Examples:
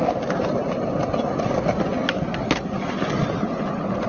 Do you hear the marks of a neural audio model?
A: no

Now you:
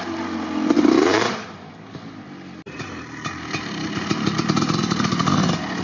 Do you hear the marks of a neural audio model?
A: no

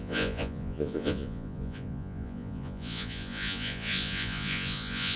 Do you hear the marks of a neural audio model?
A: yes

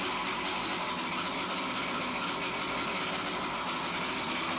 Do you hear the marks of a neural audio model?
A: no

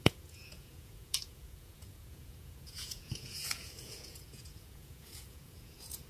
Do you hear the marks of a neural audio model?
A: yes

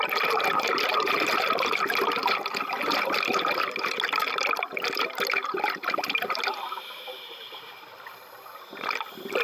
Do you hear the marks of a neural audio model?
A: no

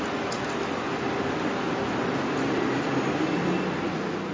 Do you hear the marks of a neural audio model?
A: no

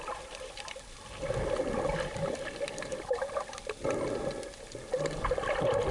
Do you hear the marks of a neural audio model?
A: no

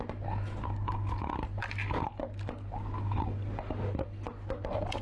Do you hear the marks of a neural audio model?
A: no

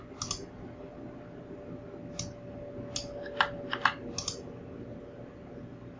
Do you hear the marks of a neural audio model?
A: no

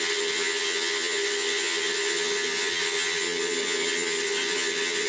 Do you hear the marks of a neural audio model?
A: yes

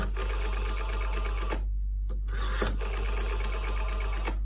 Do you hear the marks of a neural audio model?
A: no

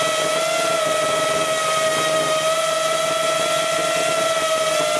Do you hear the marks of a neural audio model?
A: no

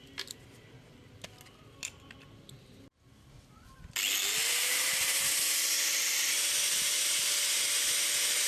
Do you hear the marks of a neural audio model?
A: no